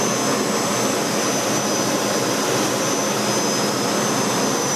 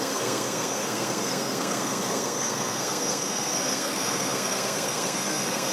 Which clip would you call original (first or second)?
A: first